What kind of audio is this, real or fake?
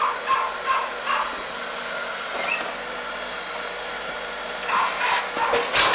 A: real